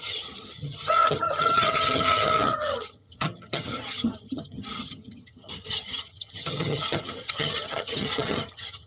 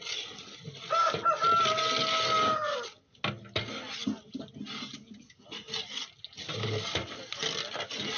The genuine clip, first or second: second